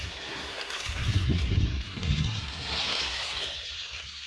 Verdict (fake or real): fake